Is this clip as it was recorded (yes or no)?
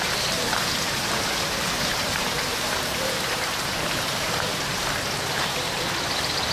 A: no